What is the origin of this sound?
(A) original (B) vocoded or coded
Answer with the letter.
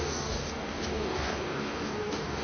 B